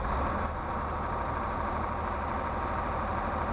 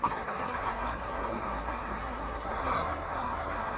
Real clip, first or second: first